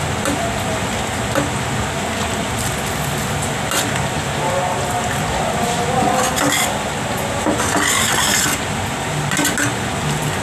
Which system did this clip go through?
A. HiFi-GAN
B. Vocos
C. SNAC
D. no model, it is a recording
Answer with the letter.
D